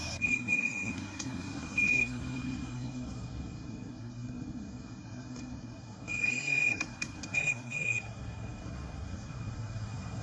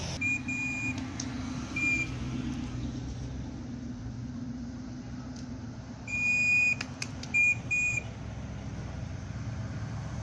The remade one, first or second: first